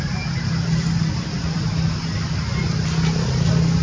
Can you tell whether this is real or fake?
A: real